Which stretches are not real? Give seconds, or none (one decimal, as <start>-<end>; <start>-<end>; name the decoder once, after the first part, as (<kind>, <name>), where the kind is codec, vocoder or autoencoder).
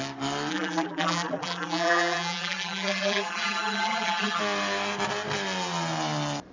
0.5-4.4 (vocoder, BigVGAN v2)